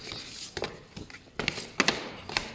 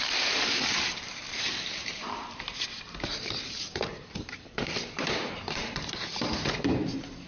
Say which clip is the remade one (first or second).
second